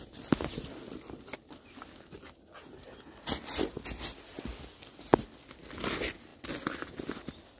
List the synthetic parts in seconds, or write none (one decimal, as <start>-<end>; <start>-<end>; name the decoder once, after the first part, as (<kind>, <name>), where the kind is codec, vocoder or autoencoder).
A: none